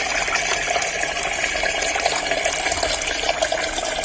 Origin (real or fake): real